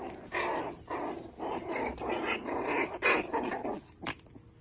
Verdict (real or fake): real